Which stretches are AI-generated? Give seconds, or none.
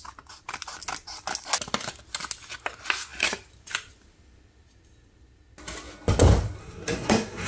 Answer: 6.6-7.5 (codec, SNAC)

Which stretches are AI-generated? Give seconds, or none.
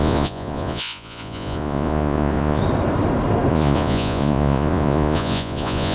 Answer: 0.0-2.6 (vocoder, Vocos); 3.5-5.9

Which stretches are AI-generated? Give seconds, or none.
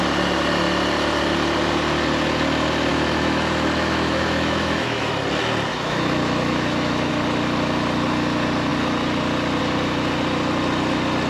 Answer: 2.9-5.1 (autoencoder, DAC-VAE); 5.7-7.1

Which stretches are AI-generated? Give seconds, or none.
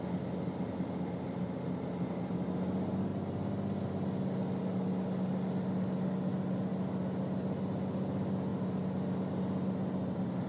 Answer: none